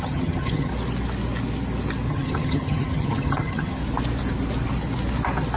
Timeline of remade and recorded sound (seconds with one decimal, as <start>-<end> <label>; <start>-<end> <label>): 0.0-0.7 remade; 0.7-2.1 recorded; 2.1-3.8 remade; 3.8-5.6 recorded